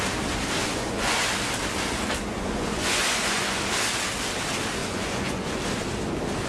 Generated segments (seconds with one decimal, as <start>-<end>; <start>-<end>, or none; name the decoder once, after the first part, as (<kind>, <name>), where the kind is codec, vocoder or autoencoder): 0.6-1.3 (vocoder, Vocos); 2.3-3.6; 4.8-5.5